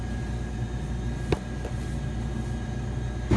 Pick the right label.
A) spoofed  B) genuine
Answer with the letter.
B